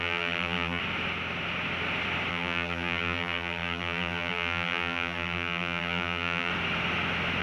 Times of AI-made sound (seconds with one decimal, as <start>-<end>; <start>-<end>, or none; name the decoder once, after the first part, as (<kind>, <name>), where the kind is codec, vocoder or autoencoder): 0.0-0.8 (vocoder, BigVGAN v2); 2.3-6.5